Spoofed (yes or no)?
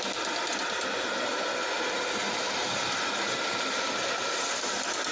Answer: no